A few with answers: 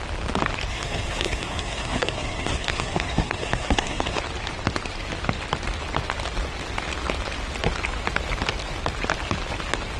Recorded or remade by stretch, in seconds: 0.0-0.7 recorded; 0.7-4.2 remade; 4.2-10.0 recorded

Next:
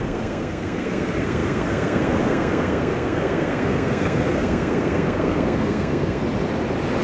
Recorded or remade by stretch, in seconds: 0.0-6.2 remade; 6.2-7.0 recorded

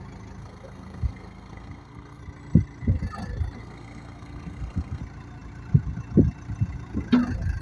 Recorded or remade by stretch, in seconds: 0.0-0.4 recorded; 0.4-2.2 remade; 2.2-3.6 recorded; 3.6-5.0 remade; 5.0-7.6 recorded

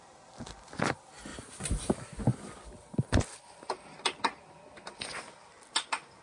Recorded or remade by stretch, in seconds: 0.0-6.2 recorded

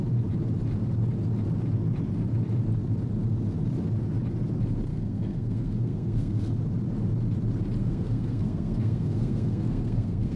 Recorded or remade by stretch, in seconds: 0.0-4.9 recorded; 4.9-6.5 remade; 6.5-7.8 recorded; 7.8-10.4 remade